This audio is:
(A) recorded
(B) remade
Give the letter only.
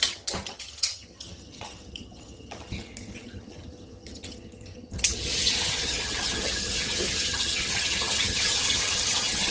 B